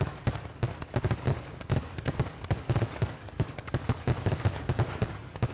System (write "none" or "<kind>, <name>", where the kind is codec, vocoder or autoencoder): codec, DAC